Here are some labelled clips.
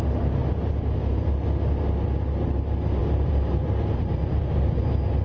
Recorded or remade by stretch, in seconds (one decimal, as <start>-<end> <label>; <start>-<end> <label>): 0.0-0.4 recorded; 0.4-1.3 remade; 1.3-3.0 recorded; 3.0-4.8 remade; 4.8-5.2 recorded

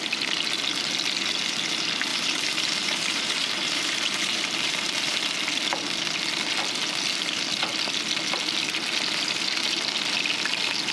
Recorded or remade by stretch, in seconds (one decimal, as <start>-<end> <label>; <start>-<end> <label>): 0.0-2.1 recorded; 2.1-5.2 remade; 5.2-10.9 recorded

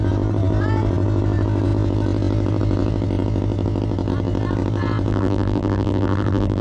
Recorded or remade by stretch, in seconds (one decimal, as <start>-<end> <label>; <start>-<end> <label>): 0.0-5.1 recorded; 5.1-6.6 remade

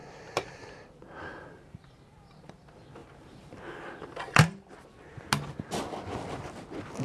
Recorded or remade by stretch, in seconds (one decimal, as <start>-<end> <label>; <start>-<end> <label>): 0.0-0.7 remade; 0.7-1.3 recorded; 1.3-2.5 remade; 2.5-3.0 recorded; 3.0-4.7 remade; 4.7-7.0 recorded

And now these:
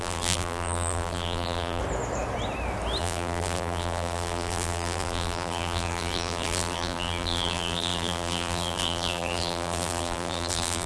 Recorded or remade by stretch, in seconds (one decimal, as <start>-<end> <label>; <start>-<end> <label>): 0.0-1.8 remade; 1.8-3.0 recorded; 3.0-10.9 remade

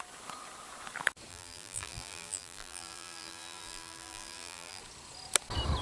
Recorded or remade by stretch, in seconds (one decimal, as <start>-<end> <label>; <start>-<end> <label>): 0.0-1.3 recorded; 1.3-4.8 remade; 4.8-5.8 recorded

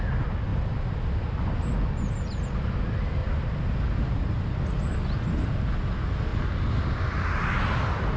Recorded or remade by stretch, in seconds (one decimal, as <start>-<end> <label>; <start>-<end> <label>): 0.0-3.2 recorded; 3.2-3.7 remade; 3.7-6.3 recorded; 6.3-7.0 remade; 7.0-8.2 recorded

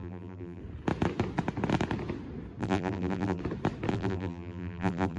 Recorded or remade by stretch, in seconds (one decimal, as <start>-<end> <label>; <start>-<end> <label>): 0.0-0.6 remade; 0.6-2.6 recorded; 2.6-3.4 remade; 3.4-3.9 recorded; 3.9-5.2 remade